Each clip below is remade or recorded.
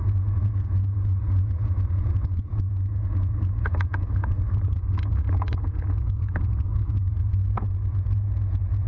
remade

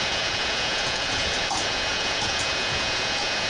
remade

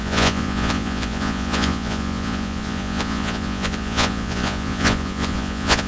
remade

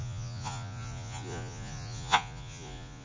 remade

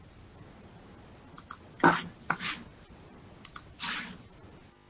recorded